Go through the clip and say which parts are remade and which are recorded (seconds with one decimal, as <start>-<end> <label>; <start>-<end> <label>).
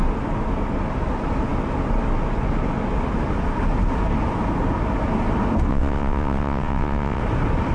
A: 0.0-5.7 recorded; 5.7-7.2 remade; 7.2-7.7 recorded